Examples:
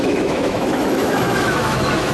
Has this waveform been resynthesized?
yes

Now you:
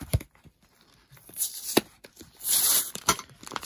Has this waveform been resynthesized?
yes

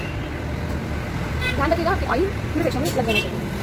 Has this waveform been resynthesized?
no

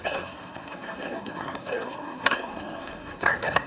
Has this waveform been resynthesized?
yes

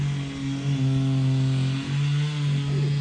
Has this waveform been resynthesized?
no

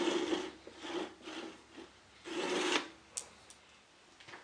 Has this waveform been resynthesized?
no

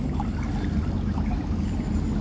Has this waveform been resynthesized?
no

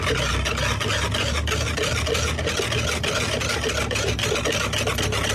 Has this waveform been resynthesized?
no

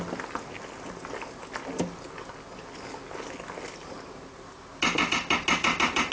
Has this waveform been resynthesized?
no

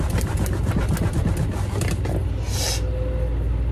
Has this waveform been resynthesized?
no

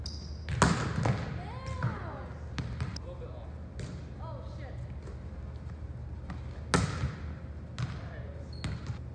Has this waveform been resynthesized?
no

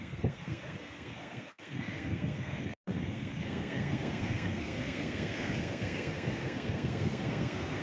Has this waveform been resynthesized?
yes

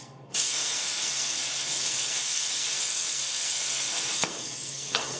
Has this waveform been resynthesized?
yes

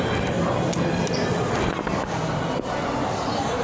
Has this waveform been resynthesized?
no